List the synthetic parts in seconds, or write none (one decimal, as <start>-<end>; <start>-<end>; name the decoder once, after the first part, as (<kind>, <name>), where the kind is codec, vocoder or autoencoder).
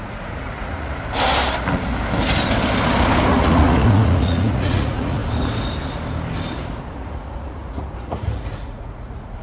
0.0-1.0 (vocoder, Vocos); 3.3-5.2; 7.0-9.4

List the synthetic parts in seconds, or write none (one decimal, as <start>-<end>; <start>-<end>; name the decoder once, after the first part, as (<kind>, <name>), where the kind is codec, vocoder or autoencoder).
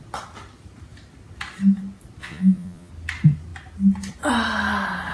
2.2-2.9 (vocoder, Vocos)